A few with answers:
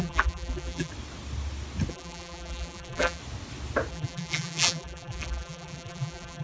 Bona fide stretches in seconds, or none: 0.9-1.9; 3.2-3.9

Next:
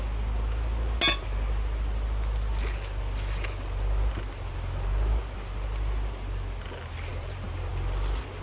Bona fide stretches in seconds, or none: 0.0-7.1; 7.7-8.4

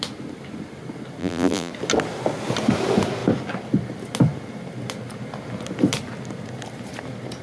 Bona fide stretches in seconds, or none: 0.0-1.2; 1.7-7.4